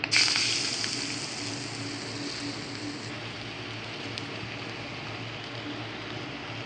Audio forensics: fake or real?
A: real